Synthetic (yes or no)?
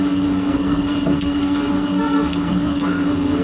yes